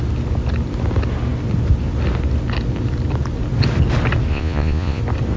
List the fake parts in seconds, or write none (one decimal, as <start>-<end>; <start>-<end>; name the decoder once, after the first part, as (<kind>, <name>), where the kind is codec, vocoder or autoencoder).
4.3-5.0 (vocoder, Vocos)